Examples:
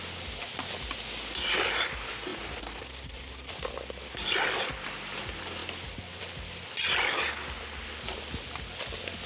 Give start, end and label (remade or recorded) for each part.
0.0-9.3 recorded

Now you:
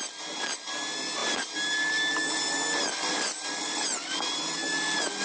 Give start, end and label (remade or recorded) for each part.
0.0-5.2 recorded

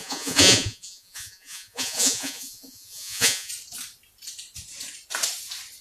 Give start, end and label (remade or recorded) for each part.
0.0-3.5 remade; 3.5-5.8 recorded

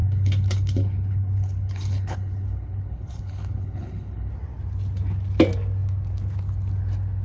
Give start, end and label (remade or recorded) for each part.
0.0-4.3 remade; 4.3-7.2 recorded

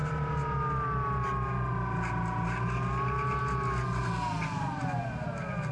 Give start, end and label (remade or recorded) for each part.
0.0-5.7 recorded

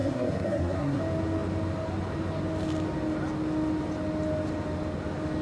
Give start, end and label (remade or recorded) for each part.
0.0-1.0 remade; 1.0-5.4 recorded

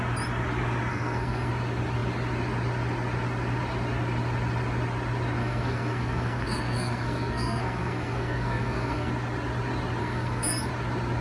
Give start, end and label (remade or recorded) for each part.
0.0-0.9 recorded; 0.9-1.5 remade; 1.5-5.4 recorded; 5.4-9.1 remade; 9.1-10.0 recorded; 10.0-10.7 remade; 10.7-11.2 recorded